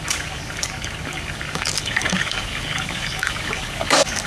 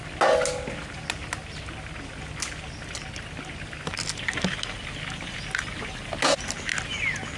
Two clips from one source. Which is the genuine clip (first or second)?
second